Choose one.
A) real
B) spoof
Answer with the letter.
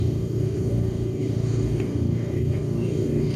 B